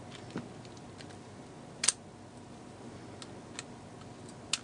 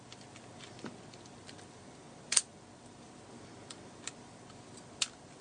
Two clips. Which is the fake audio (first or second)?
second